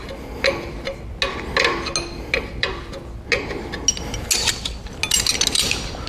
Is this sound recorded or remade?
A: recorded